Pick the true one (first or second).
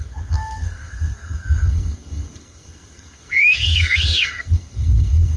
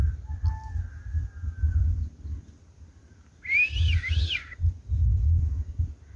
second